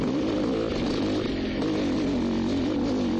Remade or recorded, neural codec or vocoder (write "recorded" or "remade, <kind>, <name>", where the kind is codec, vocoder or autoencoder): recorded